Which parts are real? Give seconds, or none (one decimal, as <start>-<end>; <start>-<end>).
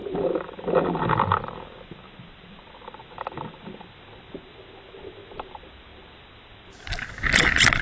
0.0-7.8